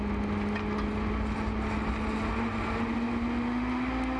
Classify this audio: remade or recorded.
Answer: recorded